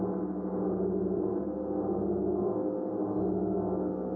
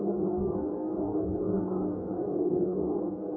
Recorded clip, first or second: first